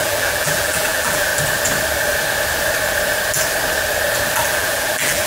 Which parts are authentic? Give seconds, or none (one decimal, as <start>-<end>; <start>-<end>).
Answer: 1.3-4.5